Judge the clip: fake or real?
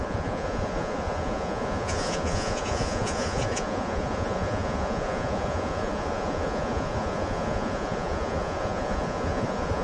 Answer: fake